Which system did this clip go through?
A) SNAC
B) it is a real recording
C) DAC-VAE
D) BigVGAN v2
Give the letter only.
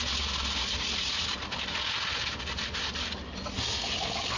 B